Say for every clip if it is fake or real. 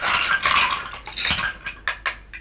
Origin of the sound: real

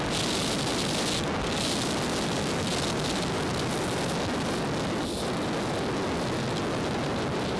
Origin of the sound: real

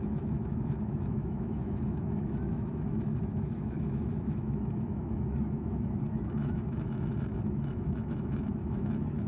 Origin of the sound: fake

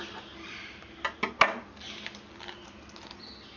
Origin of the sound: real